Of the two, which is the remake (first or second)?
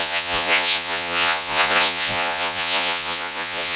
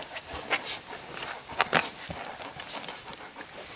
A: first